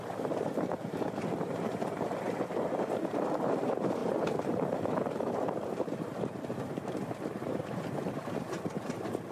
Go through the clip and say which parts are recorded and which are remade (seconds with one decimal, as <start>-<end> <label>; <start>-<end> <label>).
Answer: 0.0-9.3 remade